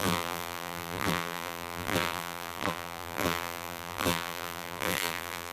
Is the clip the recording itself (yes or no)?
no